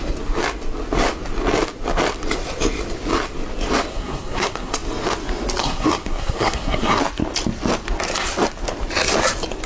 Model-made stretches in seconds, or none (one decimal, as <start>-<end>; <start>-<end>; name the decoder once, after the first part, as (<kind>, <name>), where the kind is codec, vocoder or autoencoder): 3.9-4.7 (codec, SNAC); 5.6-7.0